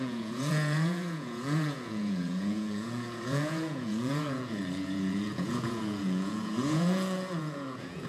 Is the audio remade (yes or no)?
yes